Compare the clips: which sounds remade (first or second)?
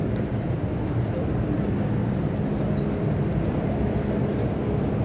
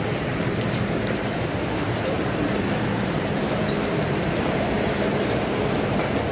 second